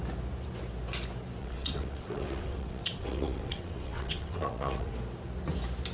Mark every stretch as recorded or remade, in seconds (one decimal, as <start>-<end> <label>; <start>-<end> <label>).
0.0-1.4 recorded; 1.4-4.9 remade; 4.9-5.9 recorded